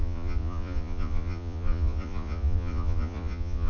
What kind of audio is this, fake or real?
fake